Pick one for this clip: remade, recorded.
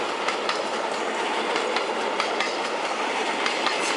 recorded